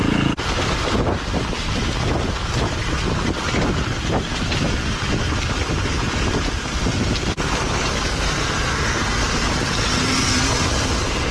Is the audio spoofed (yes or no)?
no